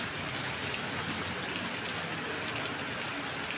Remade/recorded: recorded